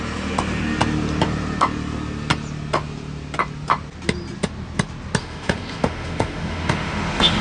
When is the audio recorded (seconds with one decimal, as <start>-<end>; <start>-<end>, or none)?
0.0-5.2